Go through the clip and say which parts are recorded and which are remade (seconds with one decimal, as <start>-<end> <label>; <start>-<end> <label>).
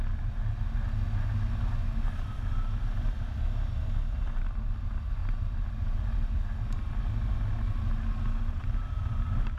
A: 0.0-9.6 recorded